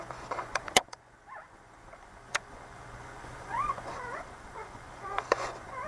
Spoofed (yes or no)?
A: yes